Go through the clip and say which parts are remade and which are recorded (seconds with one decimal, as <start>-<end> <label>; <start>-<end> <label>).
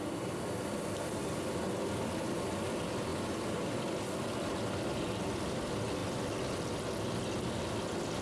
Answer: 0.0-8.2 recorded